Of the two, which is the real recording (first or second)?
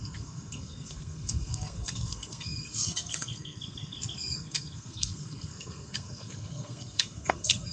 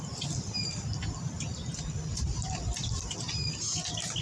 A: second